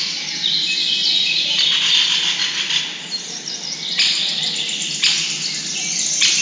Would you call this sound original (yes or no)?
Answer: yes